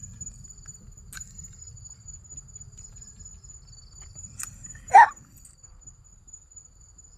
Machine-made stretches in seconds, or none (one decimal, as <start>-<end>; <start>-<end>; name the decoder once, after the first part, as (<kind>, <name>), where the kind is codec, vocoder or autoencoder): none